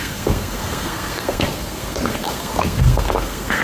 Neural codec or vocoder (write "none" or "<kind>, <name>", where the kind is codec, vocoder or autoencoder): codec, SNAC